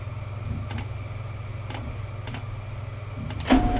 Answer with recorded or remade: recorded